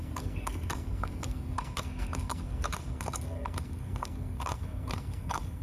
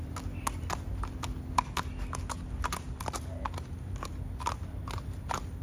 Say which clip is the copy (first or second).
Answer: first